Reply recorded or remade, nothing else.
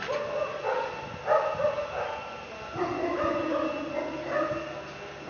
recorded